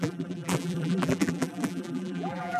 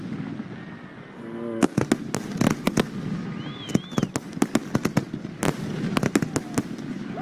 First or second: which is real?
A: second